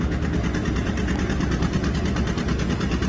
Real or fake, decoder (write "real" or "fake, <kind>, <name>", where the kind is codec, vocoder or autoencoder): real